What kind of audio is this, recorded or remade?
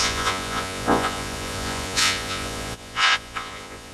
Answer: remade